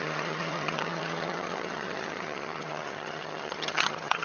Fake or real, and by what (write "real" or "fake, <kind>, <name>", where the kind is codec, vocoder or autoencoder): fake, vocoder, HiFi-GAN